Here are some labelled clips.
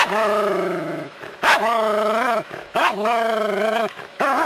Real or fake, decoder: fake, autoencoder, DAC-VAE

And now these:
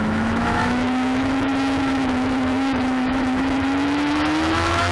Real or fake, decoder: fake, autoencoder, DAC-VAE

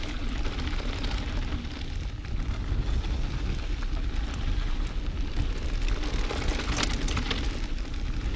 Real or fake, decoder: real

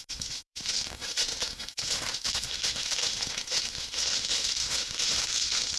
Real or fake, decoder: fake, autoencoder, DAC-VAE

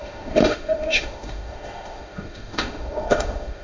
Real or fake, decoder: fake, autoencoder, DAC-VAE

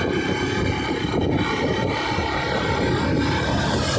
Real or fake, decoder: real